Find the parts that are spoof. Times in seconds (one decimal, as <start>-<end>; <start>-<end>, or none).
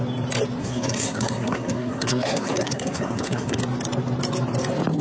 0.6-3.6